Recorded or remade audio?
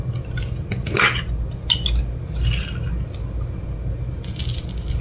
recorded